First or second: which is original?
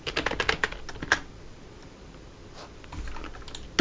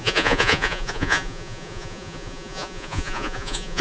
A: first